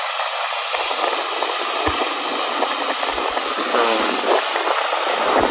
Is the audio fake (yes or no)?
no